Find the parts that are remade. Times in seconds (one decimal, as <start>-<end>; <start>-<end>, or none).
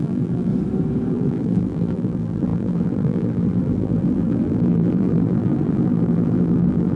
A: 0.0-0.5; 1.1-7.0